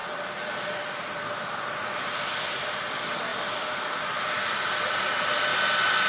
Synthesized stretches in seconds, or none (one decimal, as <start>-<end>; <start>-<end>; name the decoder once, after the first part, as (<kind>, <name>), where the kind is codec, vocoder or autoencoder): none